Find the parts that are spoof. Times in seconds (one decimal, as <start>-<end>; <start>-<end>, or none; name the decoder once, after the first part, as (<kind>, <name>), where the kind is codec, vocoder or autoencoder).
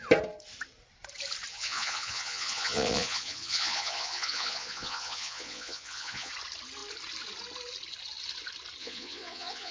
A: 1.5-6.3 (vocoder, Vocos); 8.8-9.7